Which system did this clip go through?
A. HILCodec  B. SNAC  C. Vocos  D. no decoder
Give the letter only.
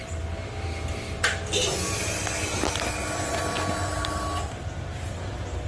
D